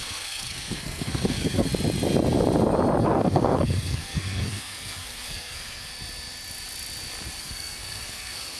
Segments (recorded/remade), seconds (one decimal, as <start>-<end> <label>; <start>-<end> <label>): 0.0-1.7 remade; 1.7-3.0 recorded; 3.0-5.9 remade; 5.9-7.4 recorded; 7.4-8.6 remade